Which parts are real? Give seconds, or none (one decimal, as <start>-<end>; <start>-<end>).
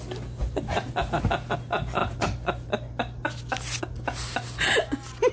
0.0-5.3